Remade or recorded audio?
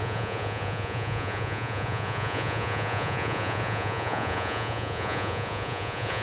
remade